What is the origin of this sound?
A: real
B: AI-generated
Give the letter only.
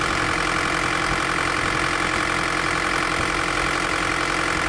A